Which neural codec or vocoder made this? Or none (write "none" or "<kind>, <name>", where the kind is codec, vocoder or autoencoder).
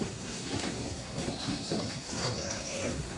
codec, SNAC